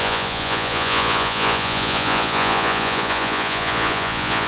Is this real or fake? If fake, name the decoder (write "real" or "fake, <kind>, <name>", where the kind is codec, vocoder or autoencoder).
fake, vocoder, Vocos